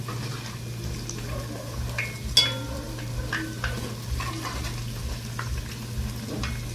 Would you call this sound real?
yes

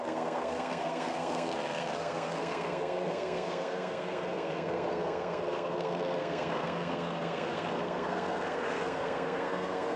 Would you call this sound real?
no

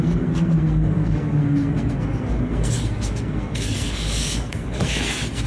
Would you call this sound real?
no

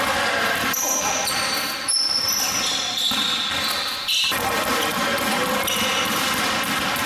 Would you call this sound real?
yes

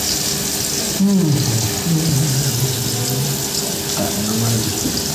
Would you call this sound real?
yes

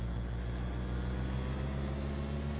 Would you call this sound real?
yes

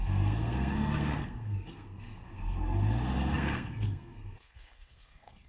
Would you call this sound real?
no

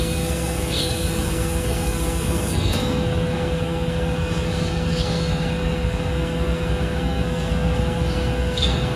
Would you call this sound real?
no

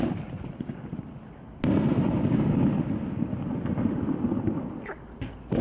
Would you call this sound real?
yes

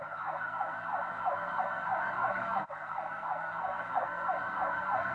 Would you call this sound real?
no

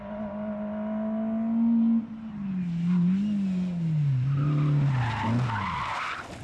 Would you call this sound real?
yes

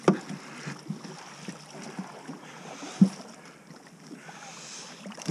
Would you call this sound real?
yes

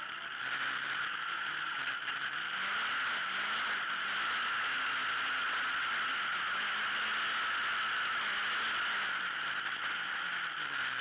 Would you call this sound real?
yes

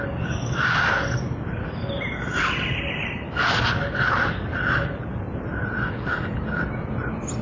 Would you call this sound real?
yes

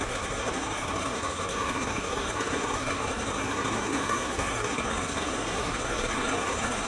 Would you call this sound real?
no